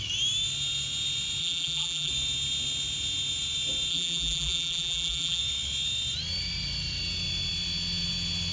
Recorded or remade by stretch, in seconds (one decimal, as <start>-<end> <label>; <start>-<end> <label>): 0.0-1.4 recorded; 1.4-2.1 remade; 2.1-3.9 recorded; 3.9-5.4 remade; 5.4-8.5 recorded